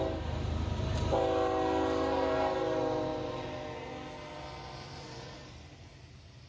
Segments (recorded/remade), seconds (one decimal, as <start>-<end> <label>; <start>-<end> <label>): 0.0-6.5 recorded